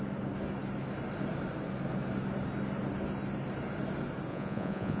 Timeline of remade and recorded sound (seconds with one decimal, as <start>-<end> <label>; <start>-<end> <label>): 0.0-4.3 recorded; 4.3-5.0 remade